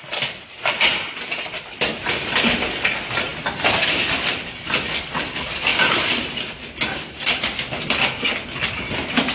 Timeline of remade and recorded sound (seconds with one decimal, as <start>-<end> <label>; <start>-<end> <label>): 0.0-9.3 recorded